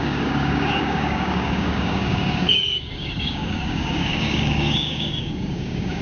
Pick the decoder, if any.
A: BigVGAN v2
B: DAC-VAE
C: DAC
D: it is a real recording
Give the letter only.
C